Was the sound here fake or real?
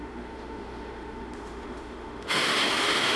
fake